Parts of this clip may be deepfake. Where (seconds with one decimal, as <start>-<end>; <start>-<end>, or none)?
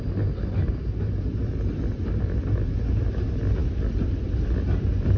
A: none